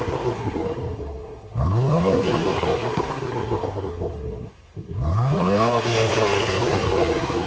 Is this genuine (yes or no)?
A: no